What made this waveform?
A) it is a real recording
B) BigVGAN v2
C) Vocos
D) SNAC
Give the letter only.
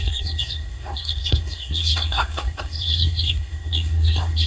D